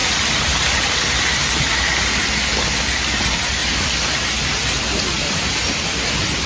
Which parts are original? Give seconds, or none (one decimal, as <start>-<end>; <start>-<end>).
0.0-6.5